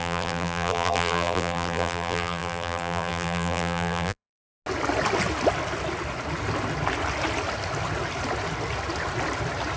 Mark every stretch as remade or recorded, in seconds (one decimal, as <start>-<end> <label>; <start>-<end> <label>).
0.0-4.4 remade; 4.4-9.8 recorded